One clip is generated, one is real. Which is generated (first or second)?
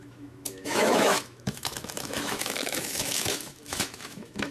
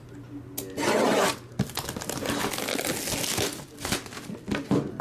first